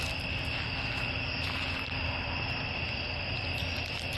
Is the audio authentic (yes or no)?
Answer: yes